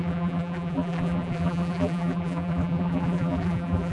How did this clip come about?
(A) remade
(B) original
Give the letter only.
A